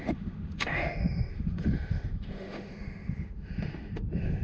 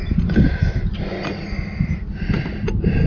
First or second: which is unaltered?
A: second